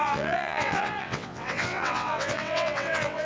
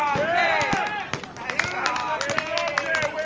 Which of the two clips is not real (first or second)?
first